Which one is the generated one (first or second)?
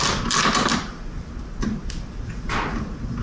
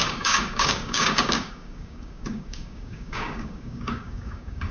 second